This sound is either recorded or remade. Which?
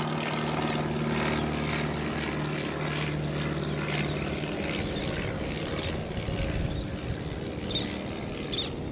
recorded